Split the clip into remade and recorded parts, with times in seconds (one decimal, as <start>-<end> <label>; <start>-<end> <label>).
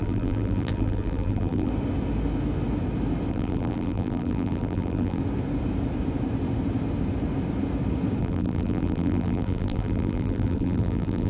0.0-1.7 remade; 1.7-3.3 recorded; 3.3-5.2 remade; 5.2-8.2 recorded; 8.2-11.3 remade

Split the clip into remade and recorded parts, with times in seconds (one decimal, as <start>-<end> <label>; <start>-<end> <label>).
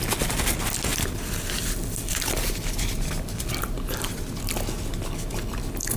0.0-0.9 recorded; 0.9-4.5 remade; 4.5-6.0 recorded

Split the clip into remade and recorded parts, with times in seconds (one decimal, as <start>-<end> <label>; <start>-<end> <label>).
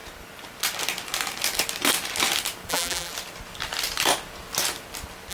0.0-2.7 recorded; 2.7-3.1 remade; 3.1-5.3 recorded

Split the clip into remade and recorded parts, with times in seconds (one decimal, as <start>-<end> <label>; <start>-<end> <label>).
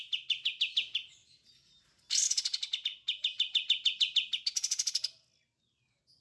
0.0-6.2 recorded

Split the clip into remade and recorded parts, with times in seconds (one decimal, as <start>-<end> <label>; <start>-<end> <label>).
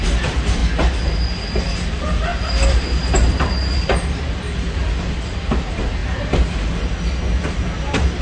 0.0-0.6 remade; 0.6-1.9 recorded; 1.9-2.3 remade; 2.3-3.5 recorded; 3.5-6.0 remade; 6.0-7.5 recorded; 7.5-8.2 remade